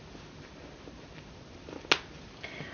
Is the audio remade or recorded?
recorded